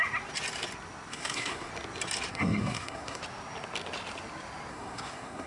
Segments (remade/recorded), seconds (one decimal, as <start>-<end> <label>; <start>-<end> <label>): 0.0-1.1 recorded; 1.1-1.7 remade; 1.7-2.3 recorded; 2.3-3.2 remade; 3.2-4.7 recorded; 4.7-5.5 remade